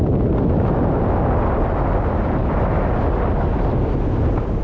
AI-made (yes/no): no